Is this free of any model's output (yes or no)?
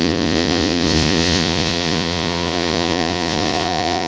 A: no